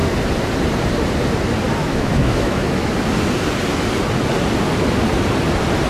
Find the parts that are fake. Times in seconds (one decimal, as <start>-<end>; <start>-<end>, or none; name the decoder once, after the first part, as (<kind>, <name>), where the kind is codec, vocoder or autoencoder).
1.8-2.9 (autoencoder, DAC-VAE)